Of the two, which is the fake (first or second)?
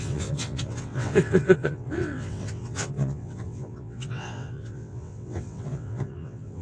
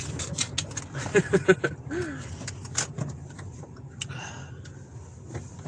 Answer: first